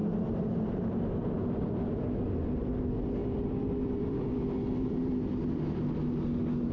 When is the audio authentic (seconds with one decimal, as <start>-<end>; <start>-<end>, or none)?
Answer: 0.9-3.2; 5.1-6.7